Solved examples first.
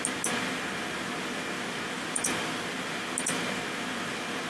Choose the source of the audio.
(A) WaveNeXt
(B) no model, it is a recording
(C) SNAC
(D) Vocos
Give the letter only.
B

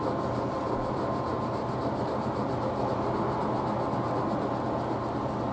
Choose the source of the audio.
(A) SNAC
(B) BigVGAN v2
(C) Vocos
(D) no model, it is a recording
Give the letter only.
D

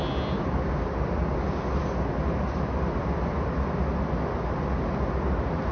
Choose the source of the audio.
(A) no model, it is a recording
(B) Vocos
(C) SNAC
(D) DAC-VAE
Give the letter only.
A